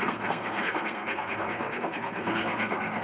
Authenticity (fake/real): fake